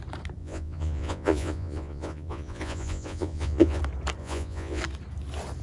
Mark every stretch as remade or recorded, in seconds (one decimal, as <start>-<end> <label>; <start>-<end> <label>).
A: 0.0-0.4 recorded; 0.4-3.8 remade; 3.8-4.2 recorded; 4.2-4.8 remade; 4.8-5.6 recorded